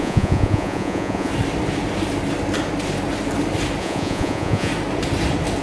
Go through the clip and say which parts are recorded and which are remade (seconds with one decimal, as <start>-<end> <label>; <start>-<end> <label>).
0.0-1.3 remade; 1.3-3.8 recorded; 3.8-4.7 remade; 4.7-5.6 recorded

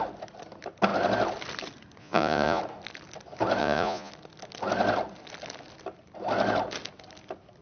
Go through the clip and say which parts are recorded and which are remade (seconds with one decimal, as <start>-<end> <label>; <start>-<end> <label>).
0.0-2.0 recorded; 2.0-2.6 remade; 2.6-3.6 recorded; 3.6-4.1 remade; 4.1-7.6 recorded

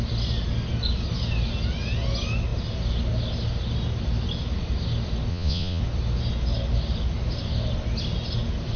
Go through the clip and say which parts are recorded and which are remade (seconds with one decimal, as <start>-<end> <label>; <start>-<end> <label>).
0.0-5.3 recorded; 5.3-5.8 remade; 5.8-8.8 recorded